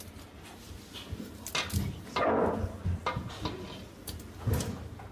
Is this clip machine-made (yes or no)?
no